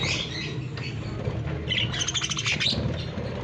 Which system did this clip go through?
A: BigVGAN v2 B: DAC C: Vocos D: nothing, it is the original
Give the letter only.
D